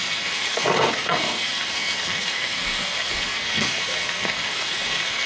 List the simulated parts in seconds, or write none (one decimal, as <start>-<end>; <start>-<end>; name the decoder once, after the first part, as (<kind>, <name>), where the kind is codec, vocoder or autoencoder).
0.0-5.3 (codec, SNAC)